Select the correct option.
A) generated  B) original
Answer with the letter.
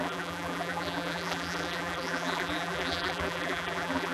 A